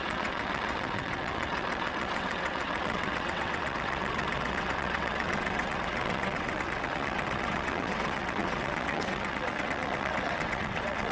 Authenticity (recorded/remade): remade